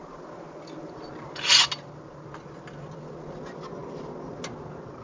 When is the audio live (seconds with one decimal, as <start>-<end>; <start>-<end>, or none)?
0.0-5.0